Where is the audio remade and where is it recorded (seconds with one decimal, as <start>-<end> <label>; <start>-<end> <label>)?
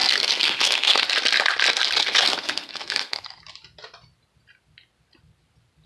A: 0.0-1.0 remade; 1.0-2.0 recorded; 2.0-3.4 remade; 3.4-5.9 recorded